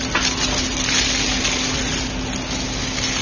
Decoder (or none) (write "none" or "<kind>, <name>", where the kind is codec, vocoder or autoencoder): none